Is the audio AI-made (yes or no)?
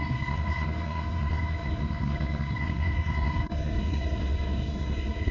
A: yes